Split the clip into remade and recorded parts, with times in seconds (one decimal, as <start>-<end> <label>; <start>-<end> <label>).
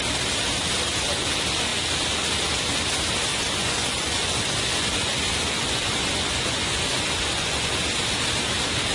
0.0-3.3 recorded; 3.3-7.7 remade; 7.7-8.9 recorded